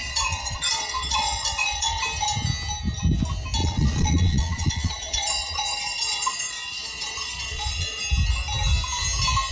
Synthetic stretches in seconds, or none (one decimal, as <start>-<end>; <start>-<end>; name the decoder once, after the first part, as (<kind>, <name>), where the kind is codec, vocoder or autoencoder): 0.0-2.0 (vocoder, Vocos); 3.6-8.0